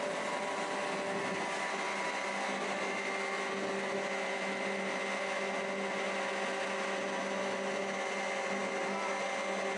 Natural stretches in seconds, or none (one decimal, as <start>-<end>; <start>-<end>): 0.0-9.8